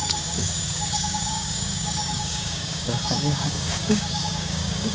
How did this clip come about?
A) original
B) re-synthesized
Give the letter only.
B